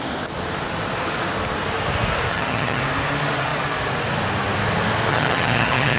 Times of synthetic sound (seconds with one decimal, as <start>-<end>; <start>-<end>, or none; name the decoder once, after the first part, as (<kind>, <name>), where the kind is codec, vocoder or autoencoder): 2.3-2.8 (vocoder, HiFi-GAN); 5.1-6.0